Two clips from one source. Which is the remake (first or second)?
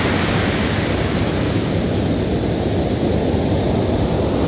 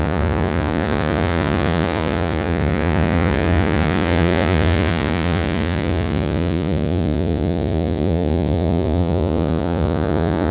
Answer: second